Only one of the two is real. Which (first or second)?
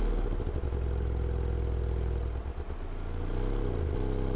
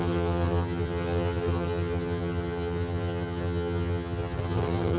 first